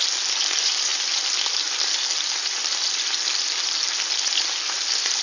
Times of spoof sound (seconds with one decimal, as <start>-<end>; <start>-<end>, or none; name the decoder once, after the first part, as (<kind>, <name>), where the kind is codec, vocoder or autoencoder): none